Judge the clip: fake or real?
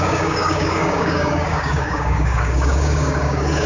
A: fake